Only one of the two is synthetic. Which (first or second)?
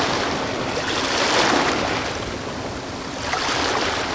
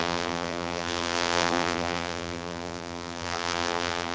second